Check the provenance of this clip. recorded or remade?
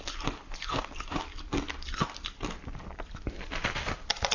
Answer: recorded